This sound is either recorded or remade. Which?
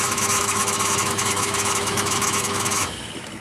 remade